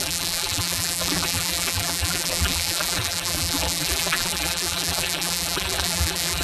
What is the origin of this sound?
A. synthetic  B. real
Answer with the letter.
A